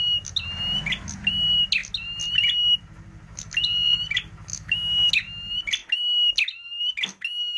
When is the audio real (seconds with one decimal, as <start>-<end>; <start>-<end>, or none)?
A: 0.0-4.5; 5.1-7.6